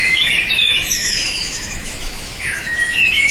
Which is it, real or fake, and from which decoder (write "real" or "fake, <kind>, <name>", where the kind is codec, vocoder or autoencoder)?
fake, autoencoder, DAC-VAE